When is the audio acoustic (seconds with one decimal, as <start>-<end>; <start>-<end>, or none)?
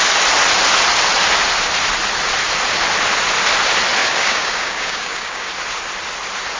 0.0-4.0; 5.5-6.6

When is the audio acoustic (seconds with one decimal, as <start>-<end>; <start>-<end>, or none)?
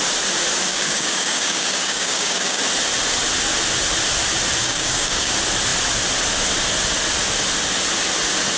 0.0-0.7; 2.6-4.6; 5.3-8.6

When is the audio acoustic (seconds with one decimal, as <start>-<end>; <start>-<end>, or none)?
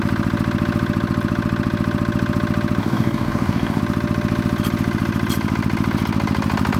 0.0-2.8; 3.8-6.8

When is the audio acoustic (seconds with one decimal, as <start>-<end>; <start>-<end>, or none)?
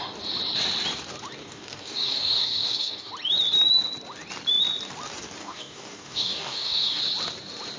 0.0-1.4; 3.1-5.4; 7.0-7.8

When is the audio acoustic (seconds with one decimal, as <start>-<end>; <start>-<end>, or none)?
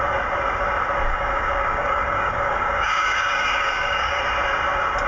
0.0-1.1; 4.2-5.1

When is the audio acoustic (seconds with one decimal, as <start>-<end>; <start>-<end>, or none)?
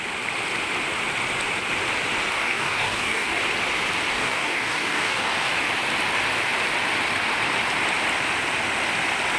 0.0-2.3; 3.4-4.1; 5.5-9.4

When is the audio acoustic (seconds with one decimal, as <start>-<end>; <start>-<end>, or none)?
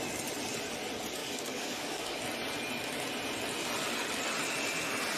0.0-1.2; 2.2-5.2